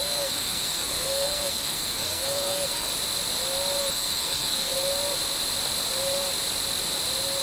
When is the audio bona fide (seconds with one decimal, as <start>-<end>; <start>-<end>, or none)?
2.9-3.8; 4.7-7.4